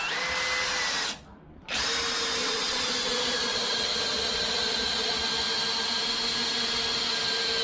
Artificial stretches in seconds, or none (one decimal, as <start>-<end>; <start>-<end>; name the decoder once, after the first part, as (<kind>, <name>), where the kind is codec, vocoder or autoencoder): 2.4-5.2 (vocoder, Vocos)